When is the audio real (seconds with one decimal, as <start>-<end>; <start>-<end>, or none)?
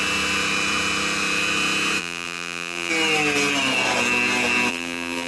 0.0-2.0; 2.9-4.7